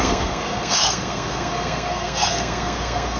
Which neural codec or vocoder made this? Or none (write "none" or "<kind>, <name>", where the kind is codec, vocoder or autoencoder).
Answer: codec, SNAC